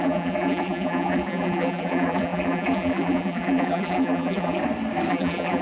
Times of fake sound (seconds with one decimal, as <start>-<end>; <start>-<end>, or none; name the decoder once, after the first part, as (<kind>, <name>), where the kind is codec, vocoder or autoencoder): 0.0-4.6 (vocoder, BigVGAN v2); 5.1-5.6